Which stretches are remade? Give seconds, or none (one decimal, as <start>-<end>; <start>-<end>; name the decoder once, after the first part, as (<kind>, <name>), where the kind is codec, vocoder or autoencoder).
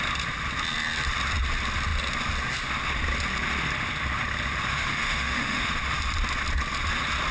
4.7-5.6 (autoencoder, DAC-VAE)